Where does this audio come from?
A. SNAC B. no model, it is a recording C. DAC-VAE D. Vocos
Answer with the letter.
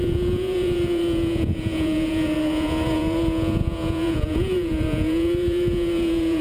D